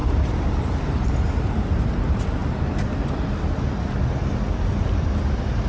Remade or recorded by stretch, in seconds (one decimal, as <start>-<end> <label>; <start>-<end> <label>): 0.0-1.9 remade; 1.9-5.7 recorded